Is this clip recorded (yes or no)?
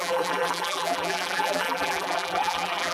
no